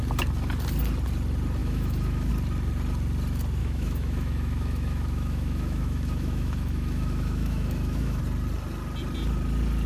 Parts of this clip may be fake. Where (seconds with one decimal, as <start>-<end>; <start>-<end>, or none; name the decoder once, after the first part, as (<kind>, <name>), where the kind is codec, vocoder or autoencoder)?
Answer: 1.6-2.3 (autoencoder, DAC-VAE); 3.6-8.2